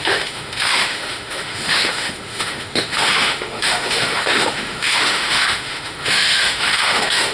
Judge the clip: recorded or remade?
remade